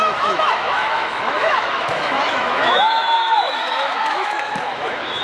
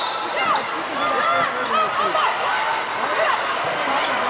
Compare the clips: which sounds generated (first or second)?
first